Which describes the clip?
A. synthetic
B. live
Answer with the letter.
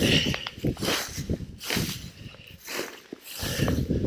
B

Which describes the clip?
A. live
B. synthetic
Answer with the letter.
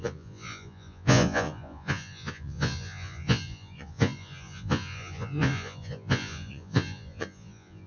B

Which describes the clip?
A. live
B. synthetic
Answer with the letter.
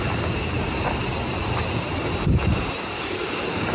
A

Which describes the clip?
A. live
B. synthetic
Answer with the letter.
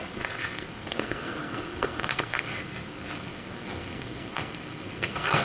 B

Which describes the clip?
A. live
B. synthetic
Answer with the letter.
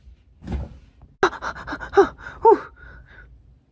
A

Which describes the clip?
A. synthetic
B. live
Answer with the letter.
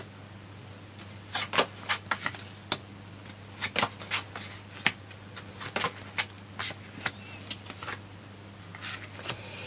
B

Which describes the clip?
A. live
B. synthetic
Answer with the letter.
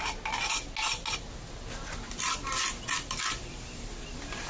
A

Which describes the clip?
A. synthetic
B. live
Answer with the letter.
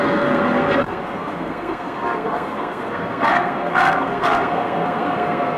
A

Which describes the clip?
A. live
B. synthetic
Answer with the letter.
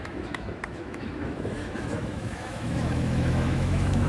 B